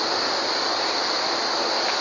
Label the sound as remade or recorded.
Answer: recorded